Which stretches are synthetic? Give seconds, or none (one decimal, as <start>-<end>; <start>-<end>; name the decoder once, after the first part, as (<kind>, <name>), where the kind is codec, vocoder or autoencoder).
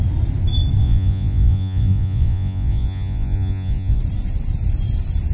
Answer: 0.8-4.0 (vocoder, Vocos)